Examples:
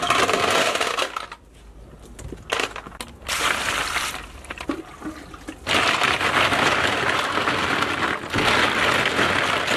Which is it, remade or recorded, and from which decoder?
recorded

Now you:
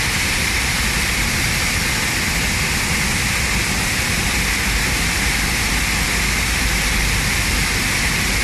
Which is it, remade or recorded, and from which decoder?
recorded